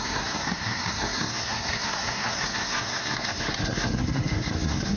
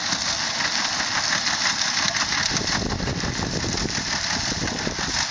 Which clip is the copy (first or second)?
first